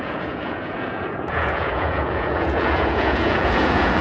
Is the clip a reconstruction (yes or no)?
yes